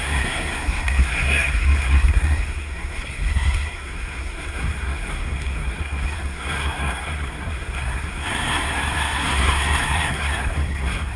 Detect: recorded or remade remade